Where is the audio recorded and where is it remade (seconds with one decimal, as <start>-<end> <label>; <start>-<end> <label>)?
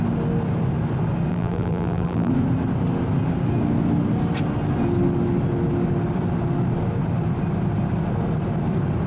0.0-1.3 recorded; 1.3-2.3 remade; 2.3-9.1 recorded